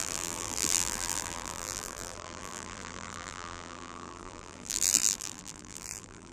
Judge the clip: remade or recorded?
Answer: remade